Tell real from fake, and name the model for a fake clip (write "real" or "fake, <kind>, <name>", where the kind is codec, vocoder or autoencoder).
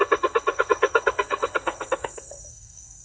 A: fake, codec, SNAC